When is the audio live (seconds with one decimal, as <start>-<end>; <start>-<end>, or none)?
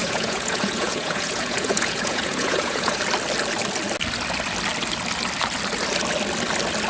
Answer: 3.0-6.9